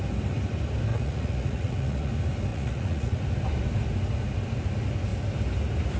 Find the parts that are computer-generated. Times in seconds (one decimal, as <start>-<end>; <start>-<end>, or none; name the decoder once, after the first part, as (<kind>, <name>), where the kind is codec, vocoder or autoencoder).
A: 0.9-2.1 (vocoder, Vocos); 2.5-3.2